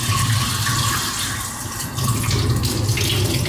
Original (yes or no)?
yes